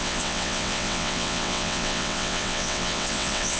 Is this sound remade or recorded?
remade